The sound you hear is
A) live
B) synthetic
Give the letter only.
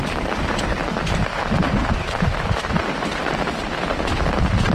B